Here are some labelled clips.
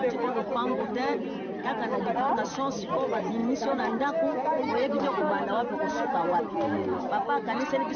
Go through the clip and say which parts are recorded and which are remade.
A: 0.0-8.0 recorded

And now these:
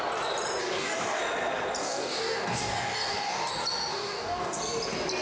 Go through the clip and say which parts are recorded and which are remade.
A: 0.0-0.6 recorded; 0.6-1.2 remade; 1.2-1.8 recorded; 1.8-3.5 remade; 3.5-3.9 recorded; 3.9-4.6 remade; 4.6-5.2 recorded

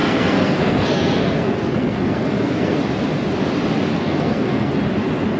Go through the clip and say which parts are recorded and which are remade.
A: 0.0-2.8 remade; 2.8-3.9 recorded; 3.9-4.7 remade; 4.7-5.4 recorded

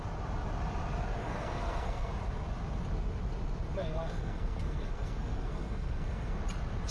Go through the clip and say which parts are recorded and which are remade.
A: 0.0-1.2 recorded; 1.2-2.1 remade; 2.1-3.8 recorded; 3.8-6.4 remade; 6.4-6.9 recorded

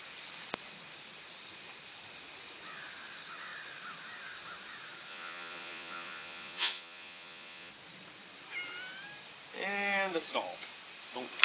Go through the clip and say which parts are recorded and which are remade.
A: 0.0-5.1 recorded; 5.1-7.7 remade; 7.7-11.4 recorded

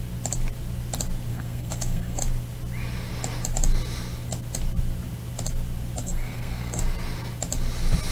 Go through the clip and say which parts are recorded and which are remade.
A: 0.0-1.3 recorded; 1.3-2.2 remade; 2.2-6.0 recorded; 6.0-6.8 remade; 6.8-8.1 recorded